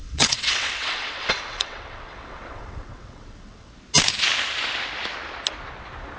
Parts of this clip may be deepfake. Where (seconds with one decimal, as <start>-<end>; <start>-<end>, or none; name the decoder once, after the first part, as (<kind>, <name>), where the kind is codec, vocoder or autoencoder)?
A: 0.0-3.7 (vocoder, WaveNeXt)